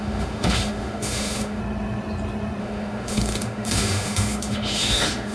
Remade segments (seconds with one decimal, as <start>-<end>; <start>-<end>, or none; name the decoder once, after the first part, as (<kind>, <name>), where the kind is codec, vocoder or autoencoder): 0.0-1.6 (autoencoder, DAC-VAE); 2.6-5.3